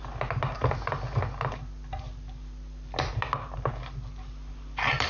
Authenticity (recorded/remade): recorded